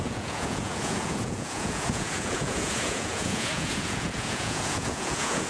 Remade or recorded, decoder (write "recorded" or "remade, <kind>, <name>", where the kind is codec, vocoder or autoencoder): remade, vocoder, Vocos